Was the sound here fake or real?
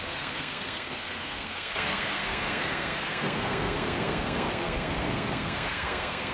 fake